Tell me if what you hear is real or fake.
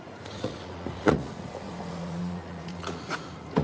fake